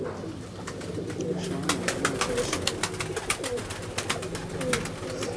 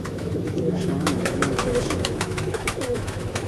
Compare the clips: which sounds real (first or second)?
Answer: first